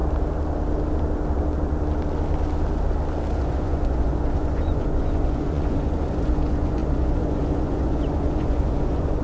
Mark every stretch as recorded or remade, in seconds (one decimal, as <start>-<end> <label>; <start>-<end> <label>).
0.0-3.4 recorded; 3.4-9.2 remade